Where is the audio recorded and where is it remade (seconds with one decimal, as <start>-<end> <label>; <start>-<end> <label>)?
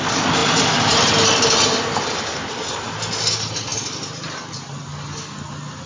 0.0-5.9 recorded